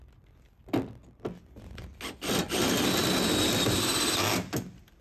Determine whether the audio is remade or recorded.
recorded